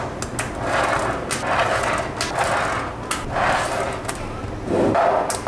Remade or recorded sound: recorded